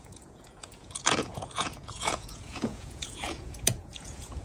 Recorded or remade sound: remade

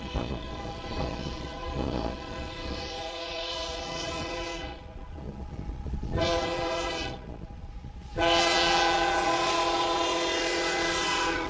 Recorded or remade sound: remade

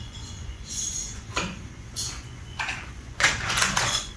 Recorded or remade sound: remade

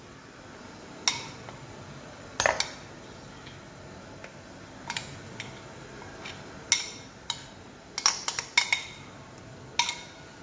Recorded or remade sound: recorded